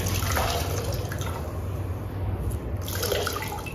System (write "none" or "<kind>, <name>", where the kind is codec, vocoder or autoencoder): none